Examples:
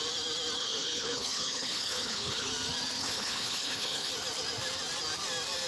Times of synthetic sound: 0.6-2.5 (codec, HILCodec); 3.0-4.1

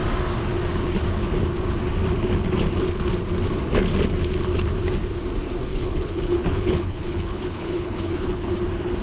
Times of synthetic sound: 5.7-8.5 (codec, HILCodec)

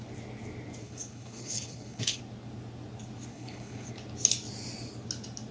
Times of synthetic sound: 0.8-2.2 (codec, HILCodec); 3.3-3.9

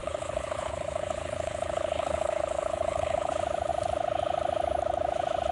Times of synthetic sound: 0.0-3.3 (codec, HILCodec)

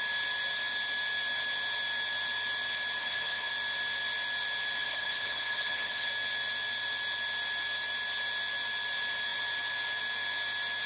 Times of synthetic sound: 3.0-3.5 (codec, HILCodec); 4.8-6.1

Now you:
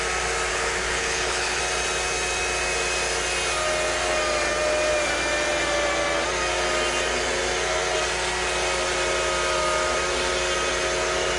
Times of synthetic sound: 0.5-1.6 (codec, HILCodec)